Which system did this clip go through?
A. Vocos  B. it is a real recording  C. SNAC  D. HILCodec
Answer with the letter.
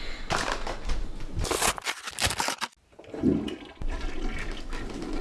B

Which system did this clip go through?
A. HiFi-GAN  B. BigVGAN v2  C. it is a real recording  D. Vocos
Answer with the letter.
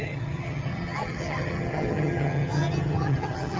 A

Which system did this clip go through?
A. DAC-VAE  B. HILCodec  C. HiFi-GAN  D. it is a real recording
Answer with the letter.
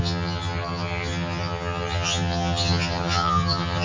C